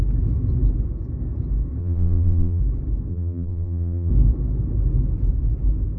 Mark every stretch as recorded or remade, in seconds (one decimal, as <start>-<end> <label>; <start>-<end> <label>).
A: 0.0-1.8 recorded; 1.8-2.6 remade; 2.6-3.1 recorded; 3.1-4.1 remade; 4.1-6.0 recorded